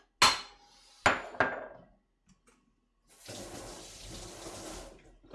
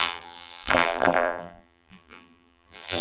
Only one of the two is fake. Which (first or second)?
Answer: second